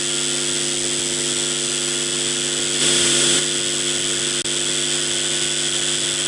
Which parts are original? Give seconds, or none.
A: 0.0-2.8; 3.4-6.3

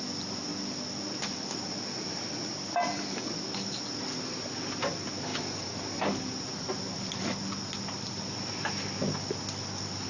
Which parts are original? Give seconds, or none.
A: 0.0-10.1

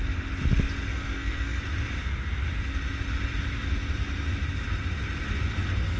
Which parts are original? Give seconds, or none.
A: 0.0-0.9; 1.6-6.0

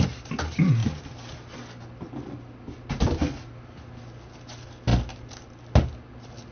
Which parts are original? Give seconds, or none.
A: 0.0-6.5

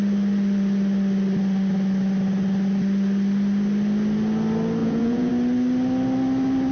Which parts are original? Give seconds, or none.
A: 0.0-4.8; 5.3-6.7

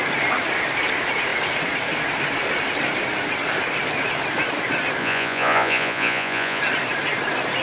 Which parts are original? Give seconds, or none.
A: 0.0-5.0; 6.6-7.6

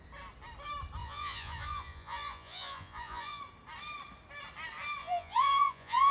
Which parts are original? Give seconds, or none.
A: 0.0-1.0; 3.4-5.0

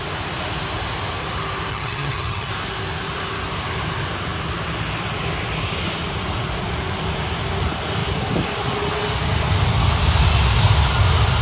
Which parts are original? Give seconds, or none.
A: 0.0-1.7; 2.5-11.4